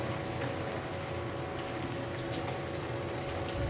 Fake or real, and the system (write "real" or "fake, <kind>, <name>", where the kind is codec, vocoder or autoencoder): real